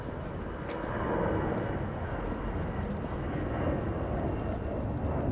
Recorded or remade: recorded